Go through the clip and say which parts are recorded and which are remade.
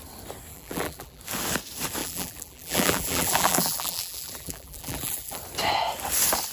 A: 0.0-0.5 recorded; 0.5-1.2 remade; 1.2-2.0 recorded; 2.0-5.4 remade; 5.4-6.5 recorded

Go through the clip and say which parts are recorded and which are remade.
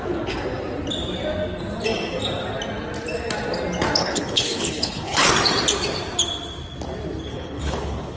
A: 0.0-4.0 recorded; 4.0-5.3 remade; 5.3-7.3 recorded; 7.3-8.2 remade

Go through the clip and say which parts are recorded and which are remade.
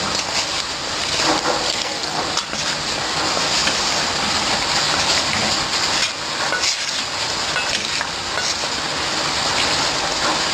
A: 0.0-1.7 recorded; 1.7-2.2 remade; 2.2-10.5 recorded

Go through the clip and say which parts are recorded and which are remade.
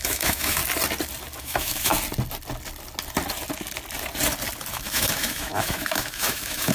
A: 0.0-0.6 remade; 0.6-1.4 recorded; 1.4-1.9 remade; 1.9-4.7 recorded; 4.7-6.7 remade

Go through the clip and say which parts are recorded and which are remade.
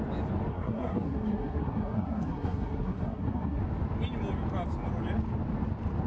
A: 0.0-0.5 recorded; 0.5-3.6 remade; 3.6-6.1 recorded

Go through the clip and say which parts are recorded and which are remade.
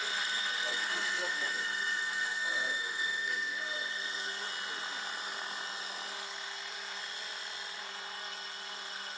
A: 0.0-4.5 remade; 4.5-6.1 recorded; 6.1-7.0 remade; 7.0-7.8 recorded; 7.8-9.2 remade